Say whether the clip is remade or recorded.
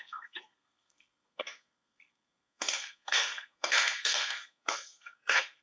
remade